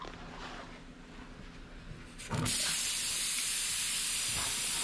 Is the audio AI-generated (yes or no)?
no